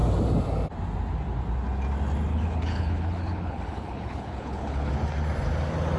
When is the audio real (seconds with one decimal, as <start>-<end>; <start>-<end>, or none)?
0.0-2.3; 4.9-6.0